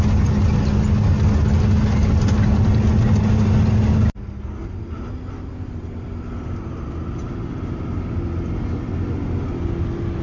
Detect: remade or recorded recorded